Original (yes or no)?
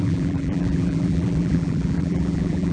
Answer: no